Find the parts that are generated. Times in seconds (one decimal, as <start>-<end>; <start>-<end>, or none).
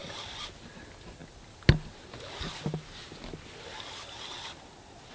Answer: none